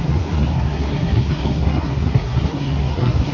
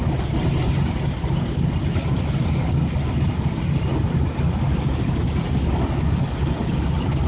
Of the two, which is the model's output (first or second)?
first